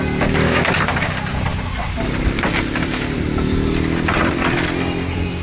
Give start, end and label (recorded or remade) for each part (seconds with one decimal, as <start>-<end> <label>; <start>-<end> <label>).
0.0-5.4 recorded